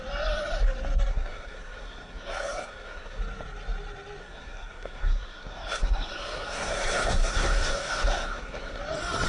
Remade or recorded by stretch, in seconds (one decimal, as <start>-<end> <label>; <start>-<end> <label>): 0.0-1.1 recorded; 1.1-3.2 remade; 3.2-4.2 recorded; 4.2-8.8 remade; 8.8-9.3 recorded